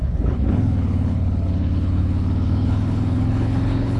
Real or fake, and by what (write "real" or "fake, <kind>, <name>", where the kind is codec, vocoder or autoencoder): fake, codec, HILCodec